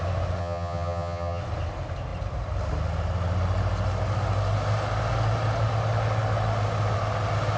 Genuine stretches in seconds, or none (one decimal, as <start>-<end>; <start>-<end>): 0.0-0.4; 1.4-7.6